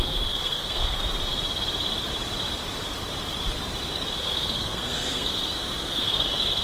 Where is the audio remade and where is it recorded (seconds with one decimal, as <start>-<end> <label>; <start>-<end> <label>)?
0.0-1.0 remade; 1.0-3.9 recorded; 3.9-6.6 remade